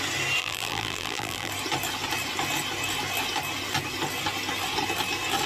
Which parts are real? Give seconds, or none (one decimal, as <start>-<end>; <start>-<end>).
0.0-0.4; 1.5-5.5